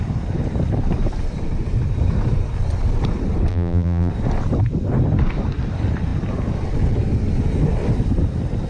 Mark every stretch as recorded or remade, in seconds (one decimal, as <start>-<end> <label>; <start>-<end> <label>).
0.0-3.5 recorded; 3.5-4.1 remade; 4.1-8.7 recorded